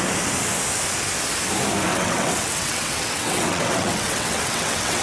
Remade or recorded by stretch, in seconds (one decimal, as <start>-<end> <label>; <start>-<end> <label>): 0.0-1.9 recorded; 1.9-5.0 remade